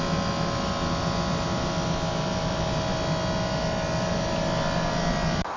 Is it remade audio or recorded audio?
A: recorded